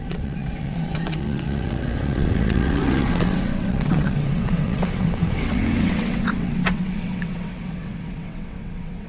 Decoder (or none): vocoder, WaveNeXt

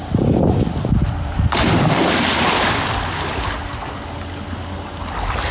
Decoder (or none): none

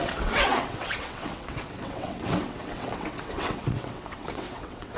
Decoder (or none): vocoder, WaveNeXt